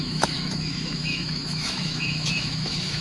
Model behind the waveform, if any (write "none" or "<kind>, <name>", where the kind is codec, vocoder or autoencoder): autoencoder, DAC-VAE